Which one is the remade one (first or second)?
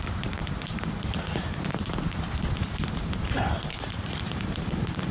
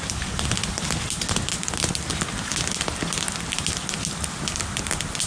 first